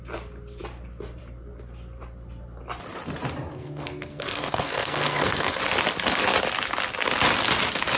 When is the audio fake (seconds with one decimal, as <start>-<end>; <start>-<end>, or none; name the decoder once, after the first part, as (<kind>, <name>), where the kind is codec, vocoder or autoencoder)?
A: 3.5-5.6 (codec, SNAC)